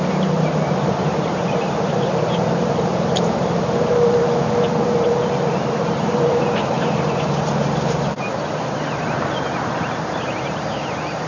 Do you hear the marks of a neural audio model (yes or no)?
yes